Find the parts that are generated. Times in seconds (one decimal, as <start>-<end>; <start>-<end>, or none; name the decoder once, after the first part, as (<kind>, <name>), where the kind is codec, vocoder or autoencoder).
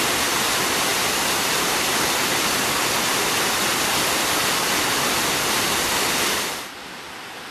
none